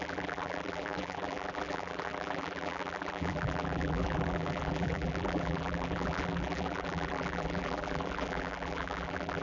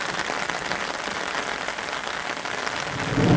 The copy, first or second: first